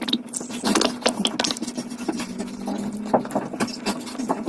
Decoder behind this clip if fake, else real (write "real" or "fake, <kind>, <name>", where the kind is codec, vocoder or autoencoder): real